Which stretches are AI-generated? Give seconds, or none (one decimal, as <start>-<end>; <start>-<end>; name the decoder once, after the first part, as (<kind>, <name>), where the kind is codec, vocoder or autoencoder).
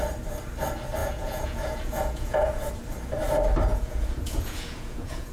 1.0-2.7 (vocoder, Vocos); 3.7-5.3